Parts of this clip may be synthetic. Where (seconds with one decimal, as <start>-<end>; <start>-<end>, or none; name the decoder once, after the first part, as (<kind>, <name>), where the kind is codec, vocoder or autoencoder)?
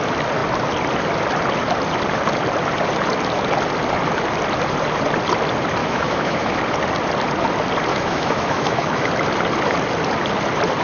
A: 5.8-6.6 (autoencoder, DAC-VAE); 7.9-9.1